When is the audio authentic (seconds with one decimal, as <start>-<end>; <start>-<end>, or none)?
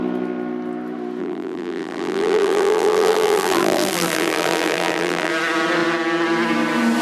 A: 0.0-1.2; 5.3-7.0